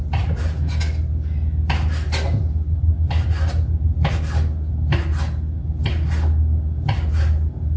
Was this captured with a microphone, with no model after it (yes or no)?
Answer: yes